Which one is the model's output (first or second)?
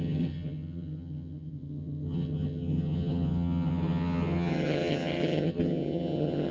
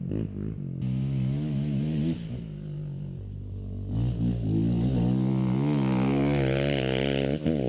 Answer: first